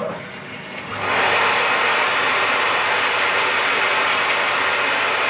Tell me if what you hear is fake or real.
real